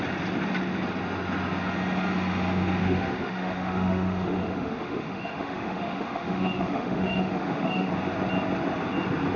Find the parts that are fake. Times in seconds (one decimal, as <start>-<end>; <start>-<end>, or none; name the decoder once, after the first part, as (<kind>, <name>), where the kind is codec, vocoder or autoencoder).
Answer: 2.8-7.9 (autoencoder, DAC-VAE)